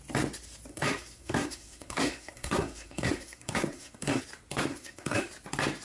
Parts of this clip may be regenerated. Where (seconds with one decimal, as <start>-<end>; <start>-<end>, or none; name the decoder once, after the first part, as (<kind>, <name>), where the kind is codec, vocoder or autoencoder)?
0.7-4.2 (codec, SNAC); 4.7-5.3